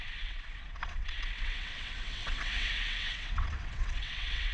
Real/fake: fake